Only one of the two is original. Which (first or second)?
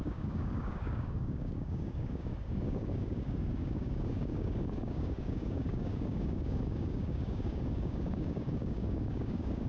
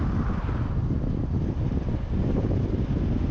second